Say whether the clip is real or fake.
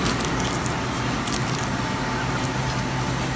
real